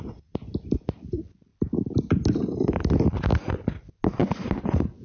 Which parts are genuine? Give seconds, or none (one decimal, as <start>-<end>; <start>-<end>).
0.0-5.0